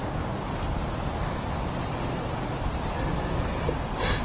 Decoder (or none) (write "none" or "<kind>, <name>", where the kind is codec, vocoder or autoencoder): none